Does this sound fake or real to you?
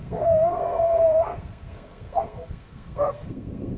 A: fake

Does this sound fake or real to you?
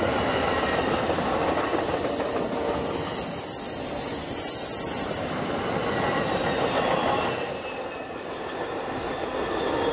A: real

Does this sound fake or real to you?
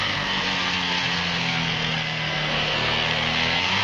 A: fake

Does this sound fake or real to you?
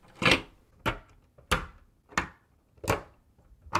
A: real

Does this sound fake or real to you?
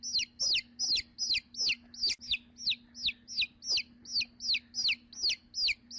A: real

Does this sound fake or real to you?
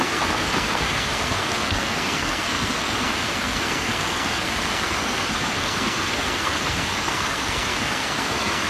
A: fake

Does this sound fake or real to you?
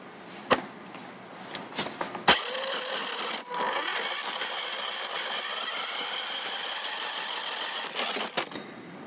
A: real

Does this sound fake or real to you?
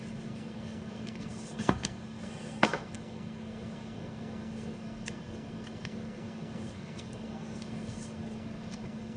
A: fake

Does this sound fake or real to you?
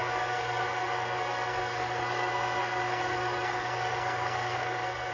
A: fake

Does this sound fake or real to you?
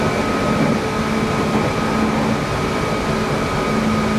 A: real